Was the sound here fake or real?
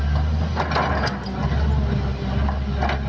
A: real